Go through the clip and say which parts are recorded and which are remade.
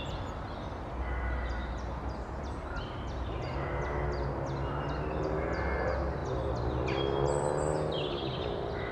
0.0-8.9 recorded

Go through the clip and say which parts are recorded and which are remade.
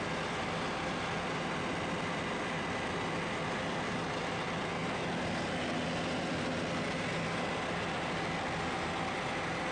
0.0-9.7 recorded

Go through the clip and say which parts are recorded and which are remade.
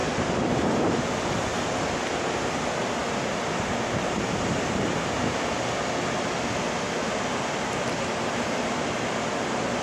0.0-3.0 recorded; 3.0-5.3 remade; 5.3-9.8 recorded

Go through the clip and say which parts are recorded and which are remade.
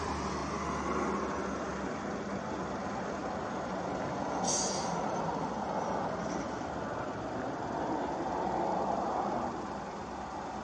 0.0-0.4 remade; 0.4-1.3 recorded; 1.3-3.2 remade; 3.2-7.6 recorded; 7.6-10.6 remade